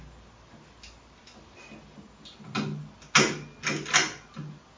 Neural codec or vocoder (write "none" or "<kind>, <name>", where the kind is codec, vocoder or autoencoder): none